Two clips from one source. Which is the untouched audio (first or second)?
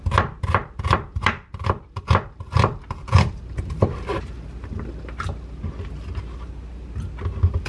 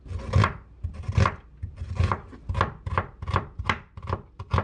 second